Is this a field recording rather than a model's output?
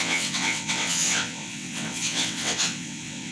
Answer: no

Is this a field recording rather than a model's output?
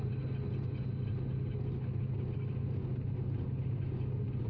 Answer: yes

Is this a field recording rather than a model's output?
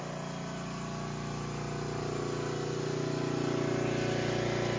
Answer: yes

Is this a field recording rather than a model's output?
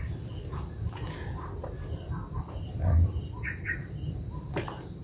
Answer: yes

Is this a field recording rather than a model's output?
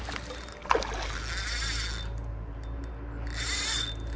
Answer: yes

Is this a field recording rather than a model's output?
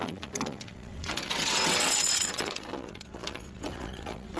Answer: no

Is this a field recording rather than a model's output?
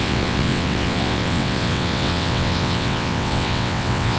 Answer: no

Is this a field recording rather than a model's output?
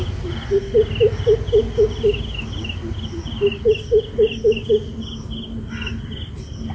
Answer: yes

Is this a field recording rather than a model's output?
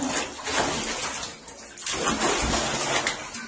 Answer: yes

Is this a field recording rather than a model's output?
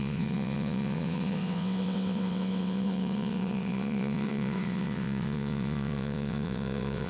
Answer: no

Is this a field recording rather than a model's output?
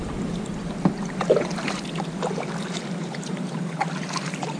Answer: yes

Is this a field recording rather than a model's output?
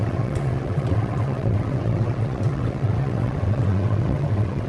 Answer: no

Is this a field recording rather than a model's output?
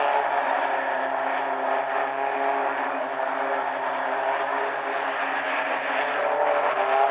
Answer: yes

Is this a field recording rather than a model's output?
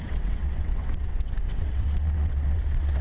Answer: no